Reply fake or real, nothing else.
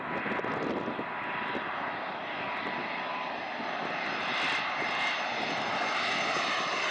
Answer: real